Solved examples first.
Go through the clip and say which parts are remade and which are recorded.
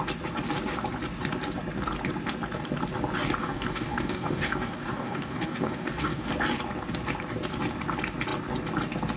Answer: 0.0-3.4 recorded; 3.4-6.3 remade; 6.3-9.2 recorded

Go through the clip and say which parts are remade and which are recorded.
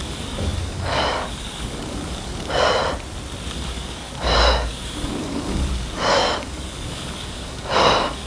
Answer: 0.0-2.8 remade; 2.8-3.5 recorded; 3.5-8.3 remade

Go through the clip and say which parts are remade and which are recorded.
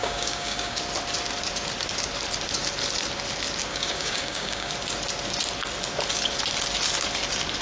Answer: 0.0-0.8 remade; 0.8-3.7 recorded; 3.7-4.7 remade; 4.7-7.6 recorded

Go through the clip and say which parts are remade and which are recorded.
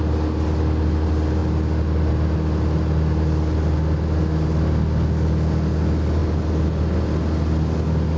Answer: 0.0-8.2 recorded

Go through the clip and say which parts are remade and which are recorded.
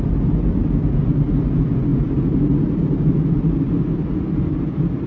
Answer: 0.0-5.1 recorded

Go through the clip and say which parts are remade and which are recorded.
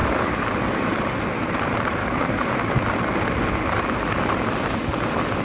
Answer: 0.0-0.5 remade; 0.5-2.0 recorded; 2.0-2.5 remade; 2.5-5.4 recorded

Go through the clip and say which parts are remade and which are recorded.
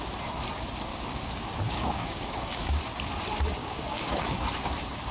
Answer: 0.0-0.9 recorded; 0.9-2.8 remade; 2.8-3.6 recorded; 3.6-4.5 remade; 4.5-5.1 recorded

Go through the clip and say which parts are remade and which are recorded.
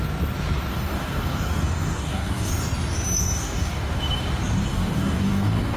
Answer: 0.0-0.7 recorded; 0.7-2.5 remade; 2.5-3.2 recorded; 3.2-4.0 remade; 4.0-4.7 recorded; 4.7-5.8 remade